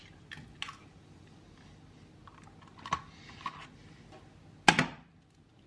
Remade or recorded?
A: recorded